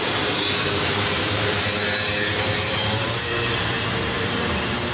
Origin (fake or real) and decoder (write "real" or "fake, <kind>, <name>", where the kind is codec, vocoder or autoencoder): fake, vocoder, BigVGAN v2